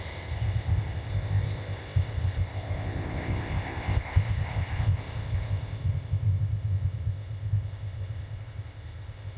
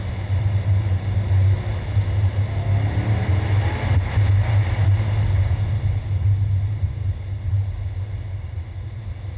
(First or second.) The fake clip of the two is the first